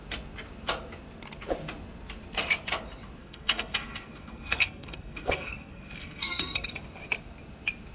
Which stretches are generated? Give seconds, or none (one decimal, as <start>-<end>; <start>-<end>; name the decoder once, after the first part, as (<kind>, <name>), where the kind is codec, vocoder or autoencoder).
3.2-6.7 (codec, SNAC)

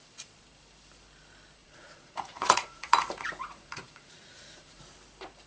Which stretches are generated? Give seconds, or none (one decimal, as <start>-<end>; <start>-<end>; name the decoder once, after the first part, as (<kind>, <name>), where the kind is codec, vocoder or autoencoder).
1.6-4.8 (vocoder, Vocos)

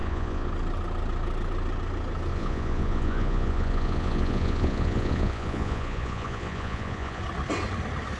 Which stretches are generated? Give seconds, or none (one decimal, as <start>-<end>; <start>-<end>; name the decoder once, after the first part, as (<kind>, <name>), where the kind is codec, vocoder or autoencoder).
0.0-0.5 (vocoder, Vocos); 2.3-7.2

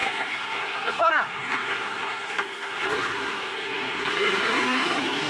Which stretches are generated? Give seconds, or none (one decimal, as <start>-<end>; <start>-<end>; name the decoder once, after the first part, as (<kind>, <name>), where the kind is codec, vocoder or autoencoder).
0.0-5.3 (codec, SNAC)

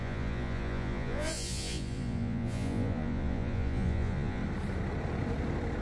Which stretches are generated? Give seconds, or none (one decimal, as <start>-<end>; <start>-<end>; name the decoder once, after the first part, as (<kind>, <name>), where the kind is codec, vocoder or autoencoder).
0.0-4.4 (vocoder, Vocos)